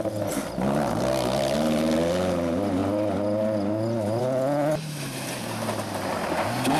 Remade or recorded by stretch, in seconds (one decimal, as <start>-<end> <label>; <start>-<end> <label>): 0.0-6.8 recorded